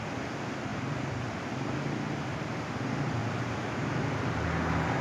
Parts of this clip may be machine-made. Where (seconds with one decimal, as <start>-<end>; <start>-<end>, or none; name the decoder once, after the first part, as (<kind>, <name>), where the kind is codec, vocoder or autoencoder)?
0.7-1.8 (vocoder, BigVGAN v2); 3.2-4.0

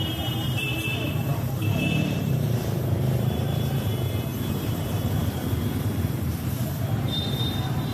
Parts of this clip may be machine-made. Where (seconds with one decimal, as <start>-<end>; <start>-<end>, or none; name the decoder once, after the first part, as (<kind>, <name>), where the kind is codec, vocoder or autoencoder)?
0.0-3.9 (vocoder, BigVGAN v2); 4.5-7.9

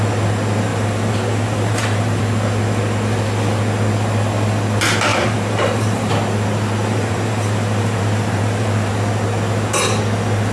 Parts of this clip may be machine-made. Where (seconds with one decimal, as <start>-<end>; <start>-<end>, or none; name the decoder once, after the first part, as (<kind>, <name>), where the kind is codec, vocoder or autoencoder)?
0.7-2.2 (vocoder, BigVGAN v2); 5.1-6.1; 6.8-8.9

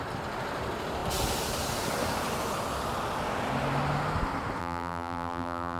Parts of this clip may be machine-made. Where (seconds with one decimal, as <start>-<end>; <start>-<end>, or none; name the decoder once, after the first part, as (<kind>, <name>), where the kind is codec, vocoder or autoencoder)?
4.6-5.8 (vocoder, BigVGAN v2)

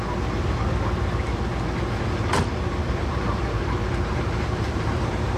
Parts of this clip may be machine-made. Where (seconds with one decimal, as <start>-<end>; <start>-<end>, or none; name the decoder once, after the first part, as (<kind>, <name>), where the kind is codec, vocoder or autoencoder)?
2.8-5.4 (vocoder, BigVGAN v2)

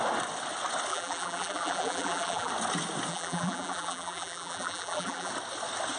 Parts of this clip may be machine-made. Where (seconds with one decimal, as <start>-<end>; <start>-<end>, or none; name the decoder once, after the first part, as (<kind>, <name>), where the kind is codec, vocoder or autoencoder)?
0.9-2.5 (vocoder, BigVGAN v2); 3.1-5.3